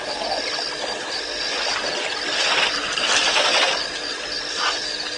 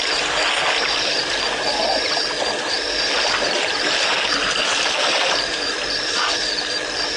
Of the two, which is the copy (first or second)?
second